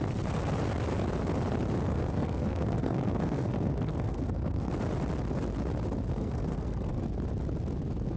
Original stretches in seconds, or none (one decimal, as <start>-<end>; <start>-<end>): 0.0-1.9; 4.7-6.1; 7.0-8.2